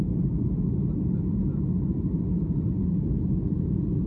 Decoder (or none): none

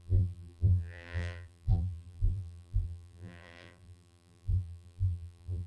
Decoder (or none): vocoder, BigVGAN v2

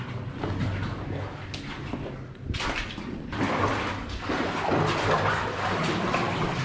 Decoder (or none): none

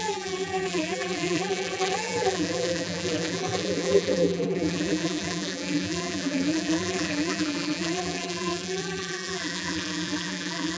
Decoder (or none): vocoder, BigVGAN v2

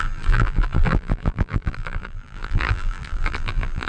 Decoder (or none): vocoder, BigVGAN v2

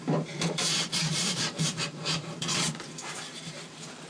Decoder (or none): vocoder, BigVGAN v2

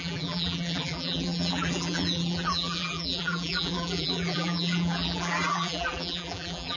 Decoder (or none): vocoder, BigVGAN v2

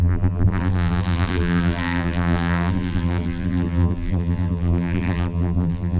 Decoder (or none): vocoder, BigVGAN v2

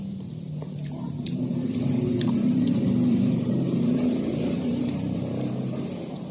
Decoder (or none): vocoder, BigVGAN v2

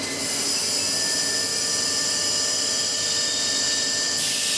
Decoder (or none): none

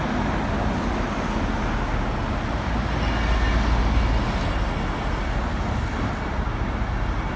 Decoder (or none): none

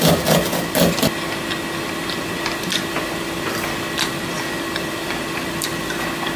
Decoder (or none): none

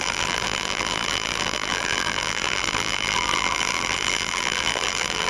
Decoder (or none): vocoder, BigVGAN v2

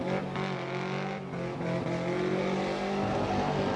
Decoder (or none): none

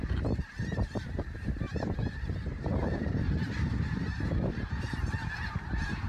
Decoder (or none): vocoder, BigVGAN v2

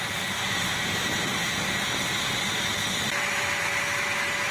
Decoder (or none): vocoder, BigVGAN v2